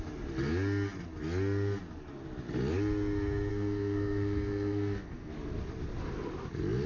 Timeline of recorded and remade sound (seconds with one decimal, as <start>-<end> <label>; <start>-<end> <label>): 0.0-3.5 recorded; 3.5-5.3 remade; 5.3-6.9 recorded